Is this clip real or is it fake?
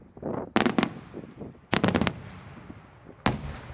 real